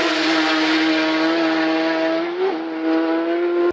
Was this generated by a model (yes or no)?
no